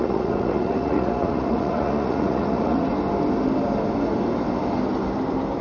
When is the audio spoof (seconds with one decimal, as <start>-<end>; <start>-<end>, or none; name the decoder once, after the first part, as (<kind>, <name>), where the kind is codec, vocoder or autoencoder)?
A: 0.0-2.9 (vocoder, Vocos)